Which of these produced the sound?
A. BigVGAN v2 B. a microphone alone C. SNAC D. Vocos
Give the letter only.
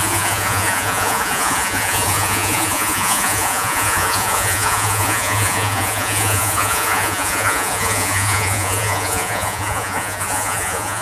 D